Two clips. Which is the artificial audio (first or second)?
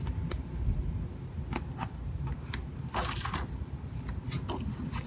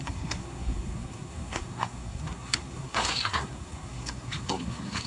second